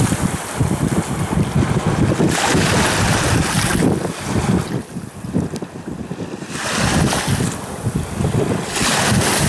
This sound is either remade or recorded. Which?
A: recorded